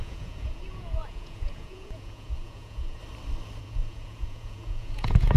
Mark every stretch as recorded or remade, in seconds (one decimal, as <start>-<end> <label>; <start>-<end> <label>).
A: 0.0-3.0 remade; 3.0-3.6 recorded; 3.6-5.4 remade